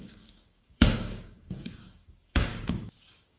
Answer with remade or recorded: remade